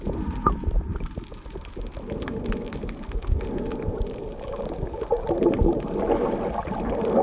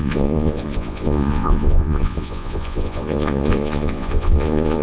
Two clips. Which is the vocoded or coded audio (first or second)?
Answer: second